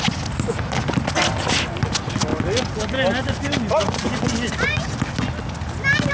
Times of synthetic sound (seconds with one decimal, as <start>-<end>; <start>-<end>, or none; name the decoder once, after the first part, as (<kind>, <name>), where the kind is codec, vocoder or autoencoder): none

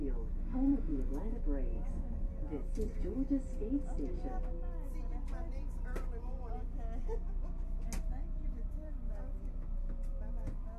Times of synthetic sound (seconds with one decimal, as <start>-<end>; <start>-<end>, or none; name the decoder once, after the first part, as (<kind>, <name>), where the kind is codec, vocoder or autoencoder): 0.9-2.2 (autoencoder, DAC-VAE)

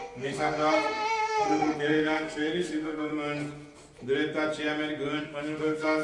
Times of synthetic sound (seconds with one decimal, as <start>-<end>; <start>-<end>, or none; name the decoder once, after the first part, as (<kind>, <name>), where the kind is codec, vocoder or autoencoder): 0.0-3.1 (codec, SNAC); 5.2-6.0

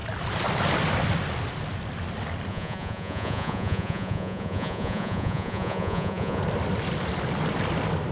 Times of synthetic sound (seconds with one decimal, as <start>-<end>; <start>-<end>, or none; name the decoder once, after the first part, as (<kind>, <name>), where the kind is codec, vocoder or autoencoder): 2.5-6.4 (vocoder, Vocos)

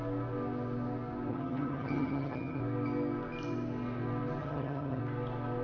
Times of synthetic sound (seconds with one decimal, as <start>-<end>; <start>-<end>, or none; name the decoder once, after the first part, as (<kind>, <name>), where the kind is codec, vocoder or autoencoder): 1.3-2.6 (vocoder, HiFi-GAN); 4.4-5.0

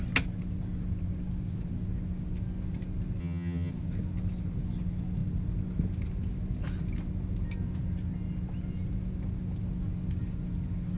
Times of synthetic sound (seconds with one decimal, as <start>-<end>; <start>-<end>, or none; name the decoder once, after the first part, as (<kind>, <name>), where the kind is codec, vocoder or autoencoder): 3.2-3.7 (vocoder, HiFi-GAN)